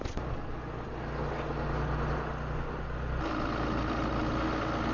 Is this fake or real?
real